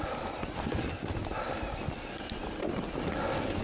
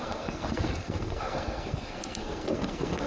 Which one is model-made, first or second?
second